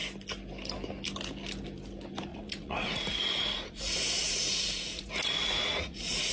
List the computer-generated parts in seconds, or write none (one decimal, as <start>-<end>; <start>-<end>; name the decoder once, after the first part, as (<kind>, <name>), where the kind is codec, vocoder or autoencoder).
2.3-6.3 (vocoder, Vocos)